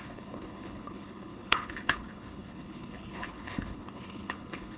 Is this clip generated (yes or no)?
yes